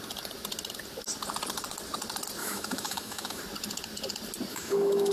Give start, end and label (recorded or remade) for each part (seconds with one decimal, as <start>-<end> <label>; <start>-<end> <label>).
0.0-2.4 recorded; 2.4-3.4 remade; 3.4-4.5 recorded; 4.5-5.1 remade